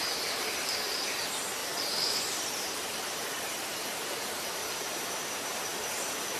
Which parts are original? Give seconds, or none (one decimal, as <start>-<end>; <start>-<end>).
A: 0.0-4.6